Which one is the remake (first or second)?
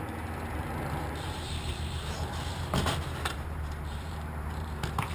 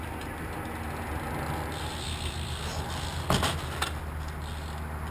first